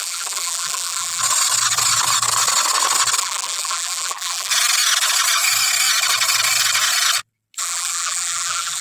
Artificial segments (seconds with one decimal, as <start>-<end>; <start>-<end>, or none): 0.0-1.2; 3.2-4.5; 7.6-8.8

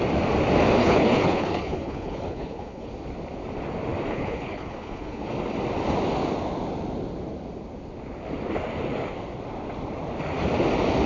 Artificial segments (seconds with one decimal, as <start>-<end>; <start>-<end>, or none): 0.8-2.9; 4.1-5.3

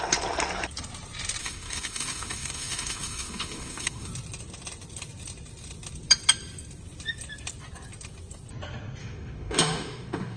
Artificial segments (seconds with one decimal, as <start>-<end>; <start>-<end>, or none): 1.4-4.1; 9.0-10.4

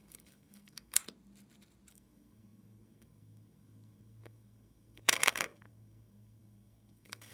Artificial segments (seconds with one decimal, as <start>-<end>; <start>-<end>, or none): 0.0-1.0; 1.9-7.3

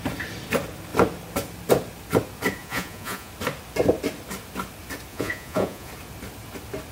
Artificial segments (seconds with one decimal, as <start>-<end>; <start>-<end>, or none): 2.6-3.3; 5.1-5.9